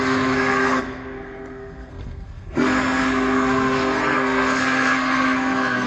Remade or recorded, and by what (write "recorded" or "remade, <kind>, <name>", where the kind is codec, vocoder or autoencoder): remade, codec, SNAC